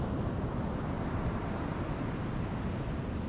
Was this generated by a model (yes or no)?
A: no